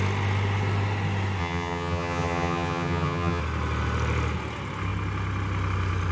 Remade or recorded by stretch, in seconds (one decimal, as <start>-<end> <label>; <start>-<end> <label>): 0.0-1.4 recorded; 1.4-3.4 remade; 3.4-6.1 recorded